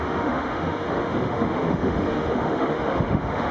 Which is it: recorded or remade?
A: remade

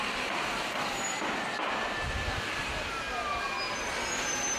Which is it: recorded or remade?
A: recorded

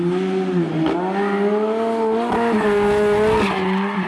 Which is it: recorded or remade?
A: recorded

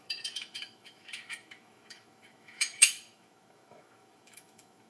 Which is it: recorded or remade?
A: remade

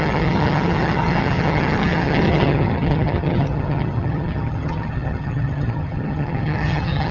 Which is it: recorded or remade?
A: remade